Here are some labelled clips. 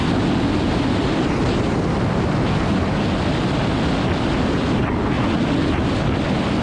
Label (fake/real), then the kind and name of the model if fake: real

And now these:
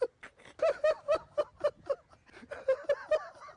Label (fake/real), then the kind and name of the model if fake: real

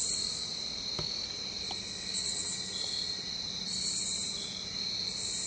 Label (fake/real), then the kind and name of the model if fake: real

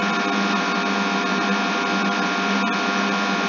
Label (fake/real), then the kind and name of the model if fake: real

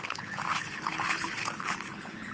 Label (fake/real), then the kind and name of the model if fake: fake, codec, HILCodec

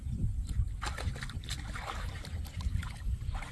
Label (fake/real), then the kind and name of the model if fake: real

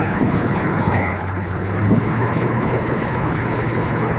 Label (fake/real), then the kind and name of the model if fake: fake, codec, HILCodec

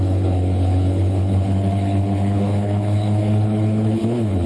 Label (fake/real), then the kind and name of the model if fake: fake, codec, HILCodec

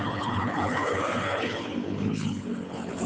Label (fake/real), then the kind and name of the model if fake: fake, codec, HILCodec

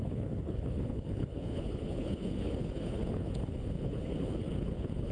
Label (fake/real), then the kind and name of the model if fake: fake, codec, HILCodec